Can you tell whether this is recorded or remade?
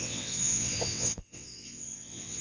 remade